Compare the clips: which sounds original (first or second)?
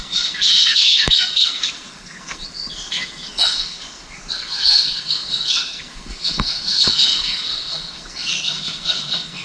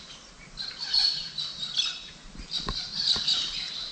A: second